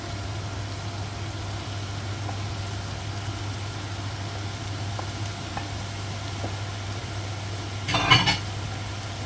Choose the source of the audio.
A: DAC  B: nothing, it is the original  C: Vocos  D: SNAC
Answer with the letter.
B